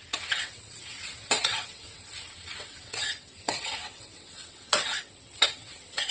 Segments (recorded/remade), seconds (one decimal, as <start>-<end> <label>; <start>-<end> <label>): 0.0-6.1 remade